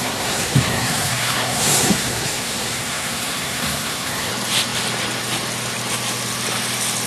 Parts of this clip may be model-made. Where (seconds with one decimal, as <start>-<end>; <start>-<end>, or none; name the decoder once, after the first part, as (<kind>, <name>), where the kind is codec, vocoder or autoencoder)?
0.0-4.3 (codec, SNAC)